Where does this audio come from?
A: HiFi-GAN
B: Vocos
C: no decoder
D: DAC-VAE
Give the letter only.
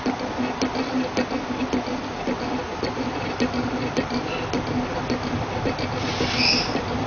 C